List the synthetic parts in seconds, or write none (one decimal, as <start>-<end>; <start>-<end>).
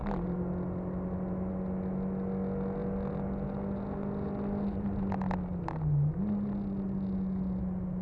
none